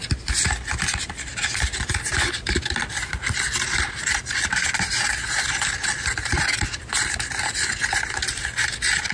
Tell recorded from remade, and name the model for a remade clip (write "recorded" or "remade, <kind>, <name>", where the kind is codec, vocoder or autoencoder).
recorded